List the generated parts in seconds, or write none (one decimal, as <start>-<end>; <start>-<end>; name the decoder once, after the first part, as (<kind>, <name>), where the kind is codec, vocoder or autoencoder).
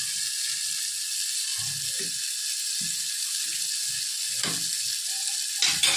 none